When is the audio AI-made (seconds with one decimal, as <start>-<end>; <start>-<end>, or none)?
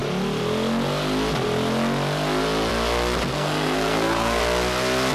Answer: 3.3-4.4